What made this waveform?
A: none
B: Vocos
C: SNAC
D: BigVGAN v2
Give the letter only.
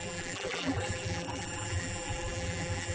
D